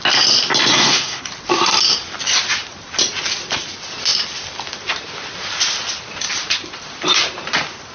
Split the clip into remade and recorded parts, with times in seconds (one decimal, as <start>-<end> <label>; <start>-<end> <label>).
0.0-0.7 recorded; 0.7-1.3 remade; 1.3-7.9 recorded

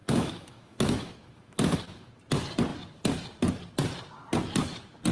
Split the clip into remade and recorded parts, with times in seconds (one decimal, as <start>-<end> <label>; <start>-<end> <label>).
0.0-2.1 remade; 2.1-5.1 recorded

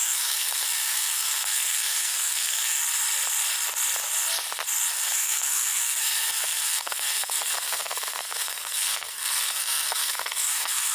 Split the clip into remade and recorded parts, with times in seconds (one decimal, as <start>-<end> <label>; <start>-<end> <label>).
0.0-2.8 remade; 2.8-4.9 recorded; 4.9-10.9 remade

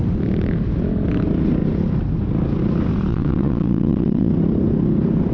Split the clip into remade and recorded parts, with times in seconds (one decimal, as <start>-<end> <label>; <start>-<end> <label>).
0.0-3.1 recorded; 3.1-4.3 remade; 4.3-5.3 recorded